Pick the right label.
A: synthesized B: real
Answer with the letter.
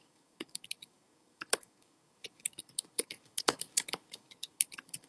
A